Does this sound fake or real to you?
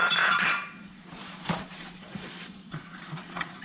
fake